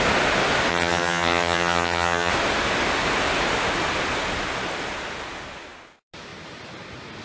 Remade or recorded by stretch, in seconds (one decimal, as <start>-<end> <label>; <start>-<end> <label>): 0.0-0.7 recorded; 0.7-2.3 remade; 2.3-7.2 recorded